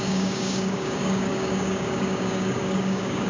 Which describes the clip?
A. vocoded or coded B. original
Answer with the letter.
A